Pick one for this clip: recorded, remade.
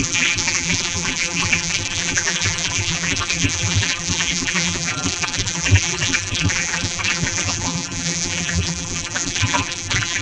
remade